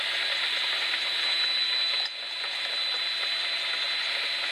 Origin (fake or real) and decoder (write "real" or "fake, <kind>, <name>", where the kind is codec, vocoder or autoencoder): real